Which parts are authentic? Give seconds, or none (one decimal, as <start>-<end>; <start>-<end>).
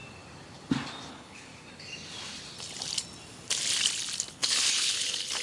0.0-1.1; 1.5-4.3